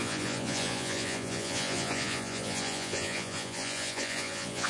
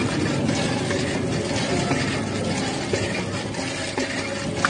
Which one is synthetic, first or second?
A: first